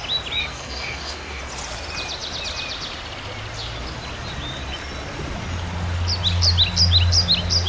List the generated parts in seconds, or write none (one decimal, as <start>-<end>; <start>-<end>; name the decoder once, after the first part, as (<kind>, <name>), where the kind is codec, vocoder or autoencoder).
0.4-1.4 (codec, SNAC)